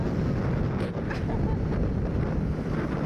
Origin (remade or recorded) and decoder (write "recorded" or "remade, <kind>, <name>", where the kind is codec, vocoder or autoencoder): recorded